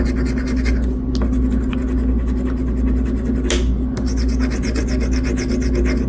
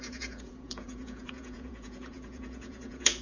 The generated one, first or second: second